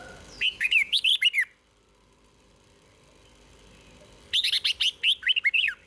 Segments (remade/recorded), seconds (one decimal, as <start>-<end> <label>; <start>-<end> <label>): 0.0-0.5 recorded; 0.5-1.1 remade; 1.1-5.9 recorded